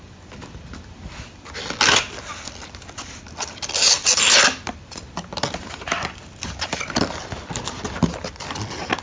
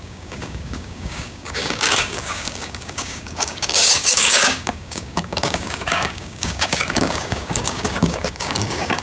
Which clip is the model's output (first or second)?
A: second